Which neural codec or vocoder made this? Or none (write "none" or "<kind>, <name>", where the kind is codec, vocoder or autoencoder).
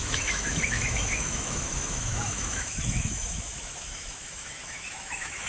autoencoder, DAC-VAE